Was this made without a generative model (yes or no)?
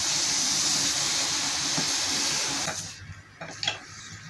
yes